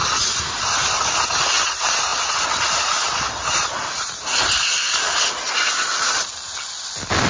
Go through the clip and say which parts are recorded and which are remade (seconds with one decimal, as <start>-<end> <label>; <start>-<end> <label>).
0.0-7.3 recorded